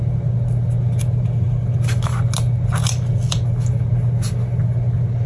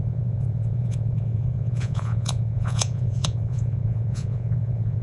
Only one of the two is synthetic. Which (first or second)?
second